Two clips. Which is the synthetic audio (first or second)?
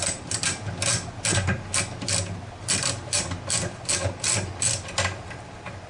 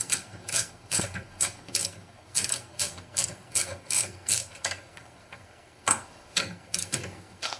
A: second